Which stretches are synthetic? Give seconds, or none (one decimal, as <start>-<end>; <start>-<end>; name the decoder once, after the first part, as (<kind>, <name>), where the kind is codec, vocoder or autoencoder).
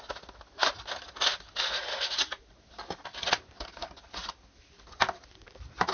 none